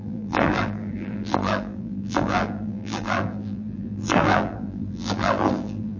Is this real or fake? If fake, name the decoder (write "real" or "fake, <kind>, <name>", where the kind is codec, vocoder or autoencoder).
fake, vocoder, BigVGAN v2